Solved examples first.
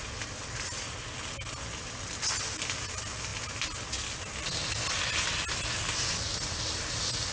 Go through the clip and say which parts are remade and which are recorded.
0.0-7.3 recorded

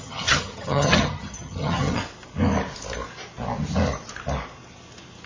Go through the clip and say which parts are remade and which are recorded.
0.0-2.0 remade; 2.0-5.3 recorded

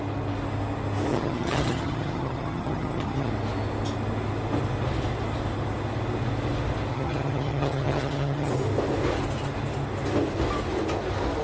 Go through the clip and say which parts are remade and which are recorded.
0.0-1.1 recorded; 1.1-3.3 remade; 3.3-6.9 recorded; 6.9-8.5 remade; 8.5-11.4 recorded